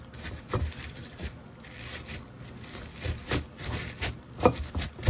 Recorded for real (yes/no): yes